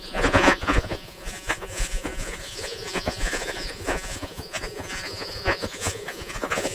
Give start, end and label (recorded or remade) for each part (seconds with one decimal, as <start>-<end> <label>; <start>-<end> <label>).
0.0-6.7 remade